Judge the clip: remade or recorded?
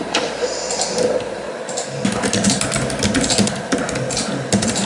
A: recorded